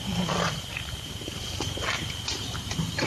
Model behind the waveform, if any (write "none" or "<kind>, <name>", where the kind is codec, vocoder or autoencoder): vocoder, BigVGAN v2